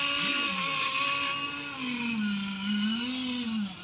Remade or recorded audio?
recorded